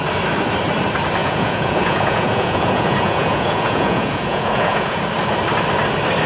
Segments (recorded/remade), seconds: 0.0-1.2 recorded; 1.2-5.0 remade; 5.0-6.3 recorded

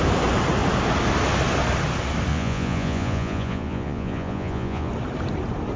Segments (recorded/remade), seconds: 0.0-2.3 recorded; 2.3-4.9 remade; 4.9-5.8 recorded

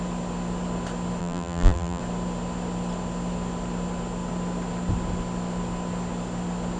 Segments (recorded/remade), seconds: 0.0-1.2 recorded; 1.2-2.0 remade; 2.0-6.8 recorded

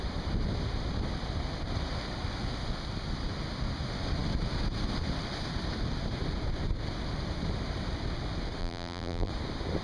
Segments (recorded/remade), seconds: 0.0-8.6 recorded; 8.6-9.3 remade; 9.3-9.8 recorded

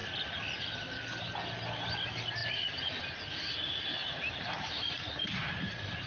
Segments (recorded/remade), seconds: 0.0-2.4 recorded; 2.4-3.0 remade; 3.0-4.0 recorded; 4.0-6.1 remade